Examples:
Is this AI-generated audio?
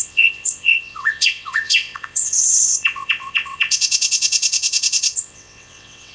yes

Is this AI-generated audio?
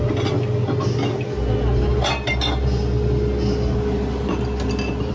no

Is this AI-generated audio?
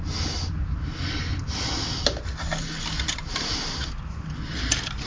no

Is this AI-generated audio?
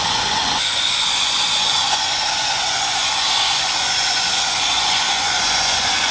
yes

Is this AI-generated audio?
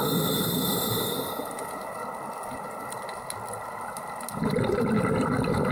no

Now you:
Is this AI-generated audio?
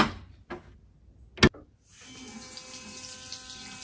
no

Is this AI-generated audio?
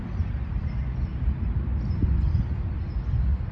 no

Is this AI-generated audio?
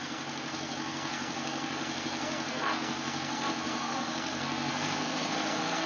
yes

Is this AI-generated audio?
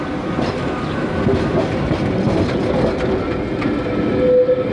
no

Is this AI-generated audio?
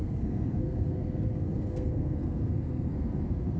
yes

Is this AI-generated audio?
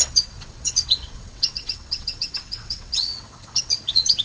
yes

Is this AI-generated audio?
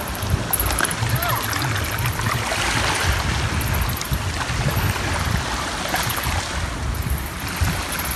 no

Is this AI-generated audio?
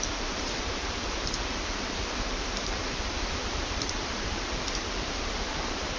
yes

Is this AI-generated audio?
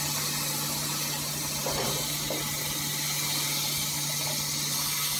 no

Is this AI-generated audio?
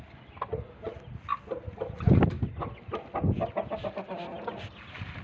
no